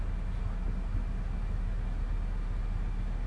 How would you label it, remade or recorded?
recorded